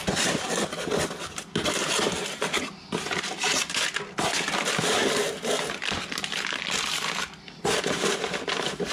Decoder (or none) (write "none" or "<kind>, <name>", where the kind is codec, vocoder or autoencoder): none